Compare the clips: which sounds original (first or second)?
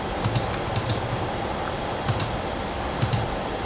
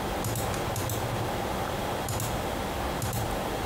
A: second